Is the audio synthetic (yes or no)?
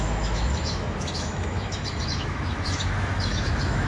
yes